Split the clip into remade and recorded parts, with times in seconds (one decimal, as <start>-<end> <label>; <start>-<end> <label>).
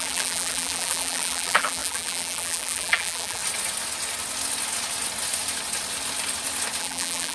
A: 0.0-3.4 remade; 3.4-6.8 recorded; 6.8-7.3 remade